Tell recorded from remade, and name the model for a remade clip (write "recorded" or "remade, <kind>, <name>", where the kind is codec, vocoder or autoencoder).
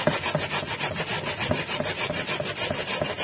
recorded